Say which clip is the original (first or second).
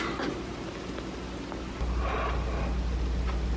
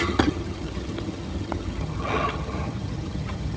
first